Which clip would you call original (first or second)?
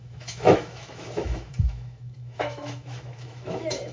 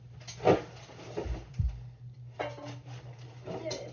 second